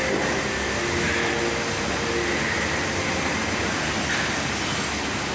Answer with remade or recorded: recorded